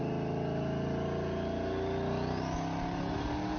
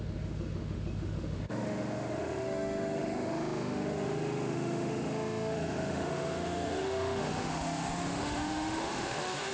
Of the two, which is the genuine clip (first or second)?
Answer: first